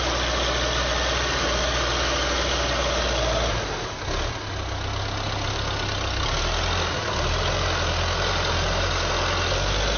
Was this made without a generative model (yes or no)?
yes